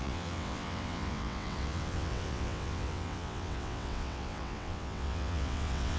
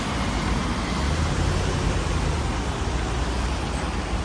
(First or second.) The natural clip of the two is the second